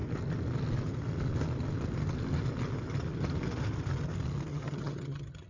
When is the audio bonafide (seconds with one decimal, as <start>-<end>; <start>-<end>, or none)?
0.0-4.5